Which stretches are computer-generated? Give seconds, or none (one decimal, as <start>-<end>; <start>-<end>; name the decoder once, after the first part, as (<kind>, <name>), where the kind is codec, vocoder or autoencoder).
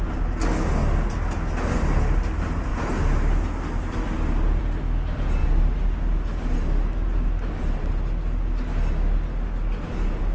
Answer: none